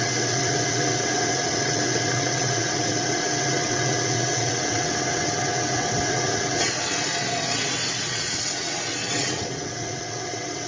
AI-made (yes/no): yes